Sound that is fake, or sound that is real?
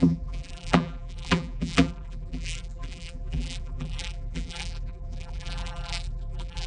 fake